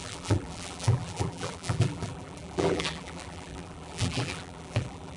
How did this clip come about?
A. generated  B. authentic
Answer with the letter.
A